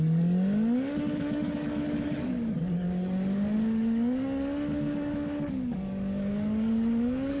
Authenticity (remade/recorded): remade